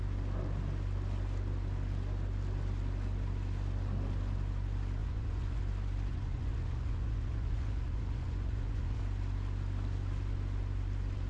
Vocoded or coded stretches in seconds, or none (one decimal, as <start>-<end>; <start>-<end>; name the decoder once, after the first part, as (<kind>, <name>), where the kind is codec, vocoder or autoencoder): 5.0-5.6 (vocoder, Vocos); 6.1-9.0